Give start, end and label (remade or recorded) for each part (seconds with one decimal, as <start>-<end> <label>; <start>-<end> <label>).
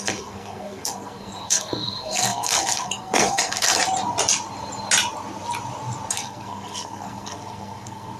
0.0-3.8 remade; 3.8-6.1 recorded; 6.1-8.2 remade